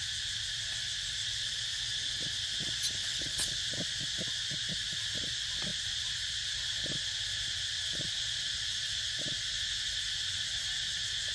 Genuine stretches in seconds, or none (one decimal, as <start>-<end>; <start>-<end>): 0.0-3.0; 3.6-11.3